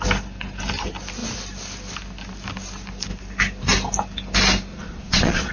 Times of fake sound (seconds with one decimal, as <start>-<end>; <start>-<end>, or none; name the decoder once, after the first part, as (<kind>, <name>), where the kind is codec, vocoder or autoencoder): 4.7-5.5 (vocoder, Vocos)